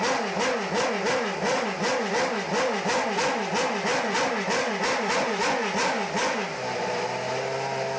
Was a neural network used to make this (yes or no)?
no